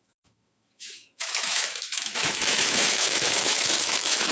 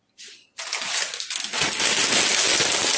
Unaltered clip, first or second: second